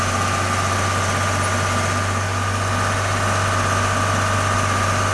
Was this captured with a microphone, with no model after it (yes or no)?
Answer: yes